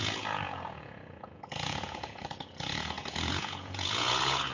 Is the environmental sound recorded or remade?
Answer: remade